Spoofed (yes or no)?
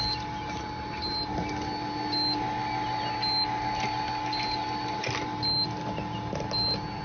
no